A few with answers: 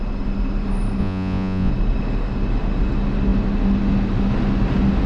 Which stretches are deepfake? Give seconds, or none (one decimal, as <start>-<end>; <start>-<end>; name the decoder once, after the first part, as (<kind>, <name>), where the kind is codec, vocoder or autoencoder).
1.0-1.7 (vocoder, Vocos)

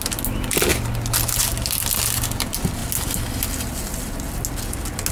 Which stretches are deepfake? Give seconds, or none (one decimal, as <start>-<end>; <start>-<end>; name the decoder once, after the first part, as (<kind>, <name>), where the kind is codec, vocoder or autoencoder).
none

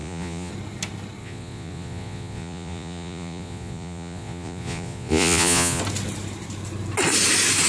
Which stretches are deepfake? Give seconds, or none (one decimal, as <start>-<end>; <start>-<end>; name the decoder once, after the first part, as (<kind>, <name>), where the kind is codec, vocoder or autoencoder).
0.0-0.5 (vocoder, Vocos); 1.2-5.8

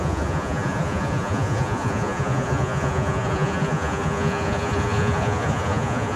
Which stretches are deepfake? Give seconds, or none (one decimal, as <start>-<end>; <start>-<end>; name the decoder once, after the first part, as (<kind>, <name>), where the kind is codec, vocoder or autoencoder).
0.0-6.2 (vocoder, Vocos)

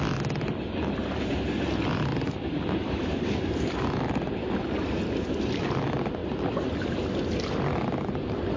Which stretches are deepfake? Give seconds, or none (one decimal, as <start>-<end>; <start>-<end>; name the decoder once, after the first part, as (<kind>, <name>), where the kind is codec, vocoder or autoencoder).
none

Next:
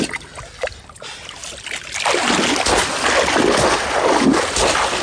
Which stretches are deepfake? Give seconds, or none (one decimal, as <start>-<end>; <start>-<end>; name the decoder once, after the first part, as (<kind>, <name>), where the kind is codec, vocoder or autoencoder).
none

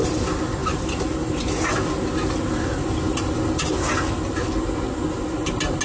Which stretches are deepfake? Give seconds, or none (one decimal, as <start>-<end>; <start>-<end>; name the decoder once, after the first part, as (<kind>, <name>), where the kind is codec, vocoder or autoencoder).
none